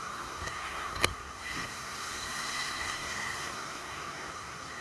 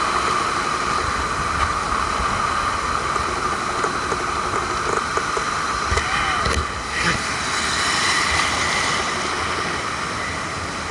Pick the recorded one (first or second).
second